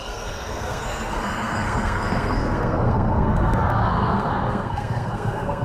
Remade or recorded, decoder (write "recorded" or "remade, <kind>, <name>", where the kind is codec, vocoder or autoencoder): remade, codec, SNAC